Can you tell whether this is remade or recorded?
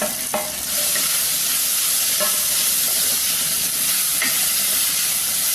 remade